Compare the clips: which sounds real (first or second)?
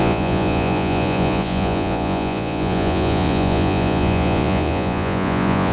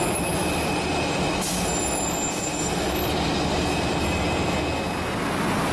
second